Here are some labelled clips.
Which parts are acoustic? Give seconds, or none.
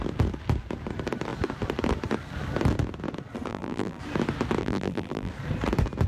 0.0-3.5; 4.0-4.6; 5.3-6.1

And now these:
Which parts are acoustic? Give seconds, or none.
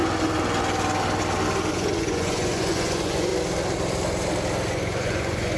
0.0-1.7; 3.3-4.7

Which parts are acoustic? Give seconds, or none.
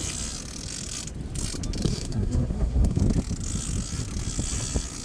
0.0-1.8; 3.0-5.0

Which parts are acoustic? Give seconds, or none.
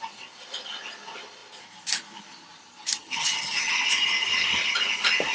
0.0-3.0; 3.7-5.3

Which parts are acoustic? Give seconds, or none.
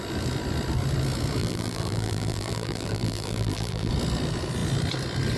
0.0-1.4; 3.9-5.4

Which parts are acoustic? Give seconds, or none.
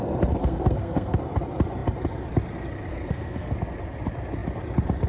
0.0-0.4; 1.2-2.9; 3.5-5.1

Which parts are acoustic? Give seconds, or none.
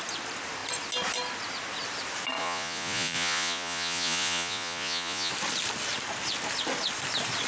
0.0-2.4; 5.3-7.5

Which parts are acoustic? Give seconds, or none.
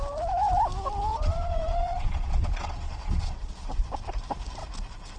0.0-1.1; 3.5-5.2